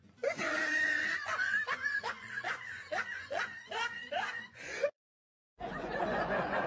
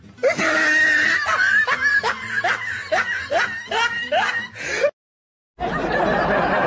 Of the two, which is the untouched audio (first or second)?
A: second